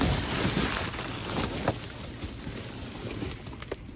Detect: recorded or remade recorded